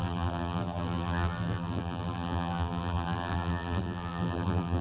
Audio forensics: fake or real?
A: fake